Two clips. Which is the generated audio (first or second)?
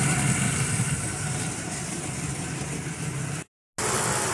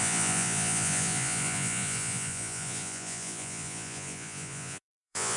second